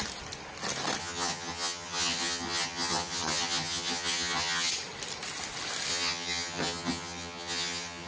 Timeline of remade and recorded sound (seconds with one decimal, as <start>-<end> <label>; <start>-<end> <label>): 0.0-1.0 recorded; 1.0-4.7 remade; 4.7-5.9 recorded; 5.9-8.1 remade